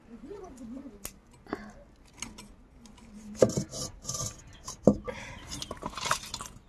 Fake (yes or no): no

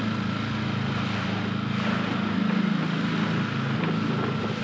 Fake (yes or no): no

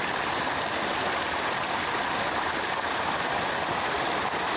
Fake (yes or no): no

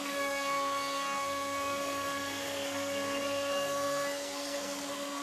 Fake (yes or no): yes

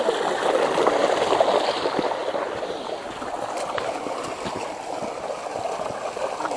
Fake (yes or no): no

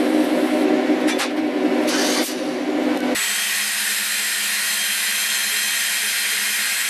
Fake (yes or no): no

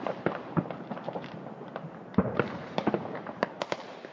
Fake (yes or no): yes